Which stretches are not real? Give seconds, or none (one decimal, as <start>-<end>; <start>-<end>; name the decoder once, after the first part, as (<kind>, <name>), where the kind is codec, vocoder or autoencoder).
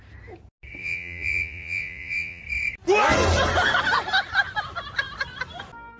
0.8-2.4 (vocoder, Vocos)